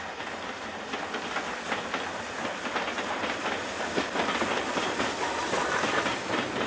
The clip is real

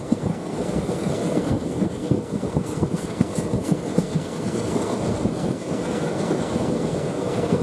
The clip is fake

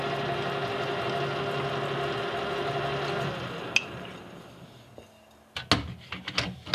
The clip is real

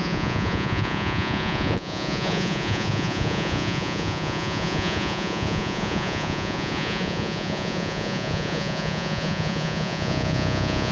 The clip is fake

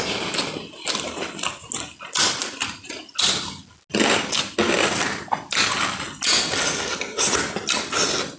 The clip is real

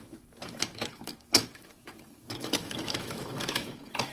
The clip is fake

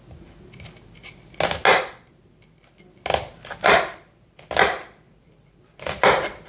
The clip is real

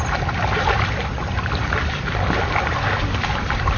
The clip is real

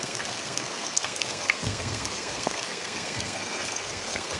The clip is fake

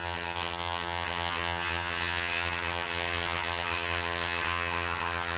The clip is fake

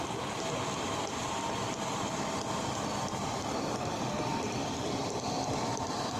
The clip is fake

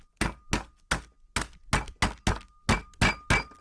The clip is real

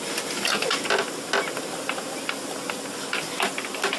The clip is real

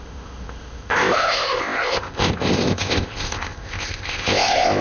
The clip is fake